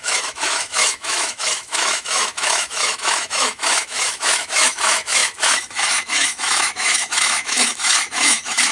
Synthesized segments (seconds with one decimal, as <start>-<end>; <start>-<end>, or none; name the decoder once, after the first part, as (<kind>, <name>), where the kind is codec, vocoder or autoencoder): 0.0-8.7 (autoencoder, DAC-VAE)